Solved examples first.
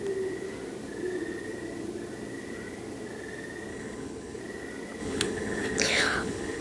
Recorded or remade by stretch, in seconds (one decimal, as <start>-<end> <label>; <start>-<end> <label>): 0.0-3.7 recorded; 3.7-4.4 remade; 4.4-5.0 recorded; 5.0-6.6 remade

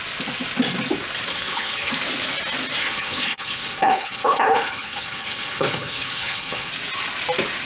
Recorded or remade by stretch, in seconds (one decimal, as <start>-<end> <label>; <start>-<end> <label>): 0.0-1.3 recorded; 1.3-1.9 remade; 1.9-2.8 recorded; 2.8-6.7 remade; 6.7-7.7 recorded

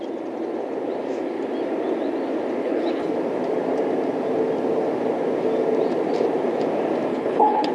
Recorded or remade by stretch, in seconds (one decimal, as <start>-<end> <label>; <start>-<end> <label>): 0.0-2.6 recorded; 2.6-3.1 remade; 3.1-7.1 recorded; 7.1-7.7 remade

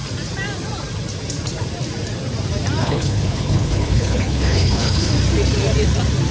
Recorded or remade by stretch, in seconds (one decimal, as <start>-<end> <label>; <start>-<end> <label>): 0.0-2.8 recorded; 2.8-5.1 remade; 5.1-6.3 recorded

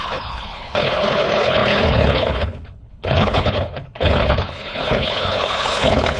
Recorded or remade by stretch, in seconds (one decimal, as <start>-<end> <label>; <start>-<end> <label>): 0.0-6.2 remade

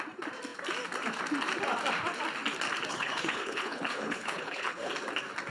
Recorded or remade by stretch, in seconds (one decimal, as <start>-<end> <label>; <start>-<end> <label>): 0.0-2.9 recorded; 2.9-4.9 remade; 4.9-5.5 recorded